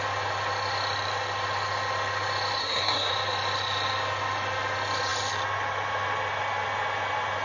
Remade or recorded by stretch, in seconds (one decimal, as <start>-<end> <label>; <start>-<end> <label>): 0.0-2.6 recorded; 2.6-3.1 remade; 3.1-7.4 recorded